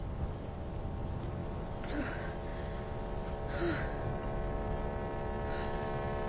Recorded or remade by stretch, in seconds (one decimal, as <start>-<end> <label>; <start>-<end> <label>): 0.0-6.3 recorded